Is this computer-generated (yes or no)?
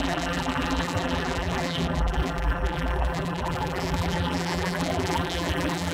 yes